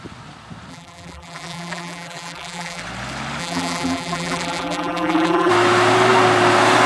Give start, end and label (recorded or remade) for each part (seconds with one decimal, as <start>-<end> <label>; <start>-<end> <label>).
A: 0.0-0.7 recorded; 0.7-2.8 remade; 2.8-3.4 recorded; 3.4-5.5 remade; 5.5-6.9 recorded